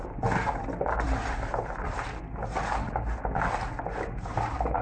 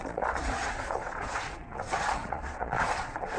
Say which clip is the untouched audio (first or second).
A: first